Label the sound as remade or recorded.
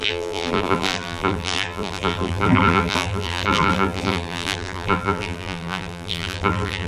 remade